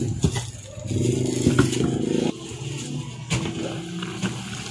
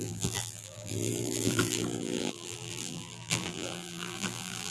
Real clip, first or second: first